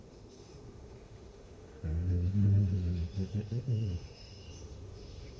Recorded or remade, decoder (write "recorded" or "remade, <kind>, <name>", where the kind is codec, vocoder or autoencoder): remade, autoencoder, DAC-VAE